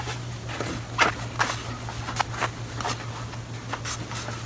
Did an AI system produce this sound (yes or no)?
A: no